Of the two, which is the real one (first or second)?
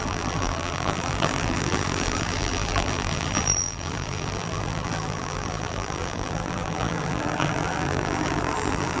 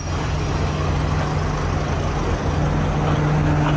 second